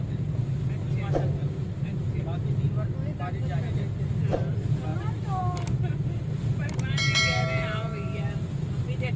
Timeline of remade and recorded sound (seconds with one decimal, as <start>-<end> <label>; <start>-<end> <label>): 0.0-9.2 recorded